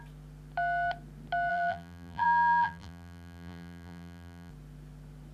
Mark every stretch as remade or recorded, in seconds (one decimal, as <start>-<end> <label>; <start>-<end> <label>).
0.0-1.5 recorded; 1.5-4.5 remade; 4.5-5.3 recorded